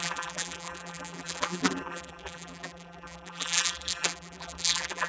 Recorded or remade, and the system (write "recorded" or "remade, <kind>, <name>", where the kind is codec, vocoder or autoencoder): remade, vocoder, BigVGAN v2